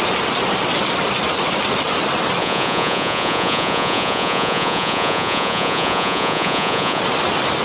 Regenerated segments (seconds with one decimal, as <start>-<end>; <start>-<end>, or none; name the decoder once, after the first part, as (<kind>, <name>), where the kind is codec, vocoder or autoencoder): 2.4-7.0 (vocoder, Vocos)